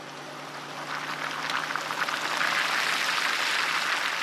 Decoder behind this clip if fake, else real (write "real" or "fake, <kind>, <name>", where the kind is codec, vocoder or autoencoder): real